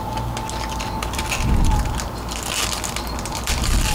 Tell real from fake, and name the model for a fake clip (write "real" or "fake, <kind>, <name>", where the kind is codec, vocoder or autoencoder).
real